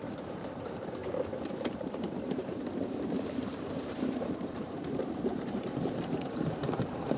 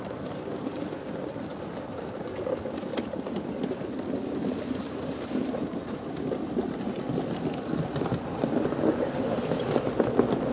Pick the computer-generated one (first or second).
first